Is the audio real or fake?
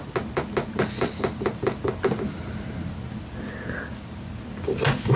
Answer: real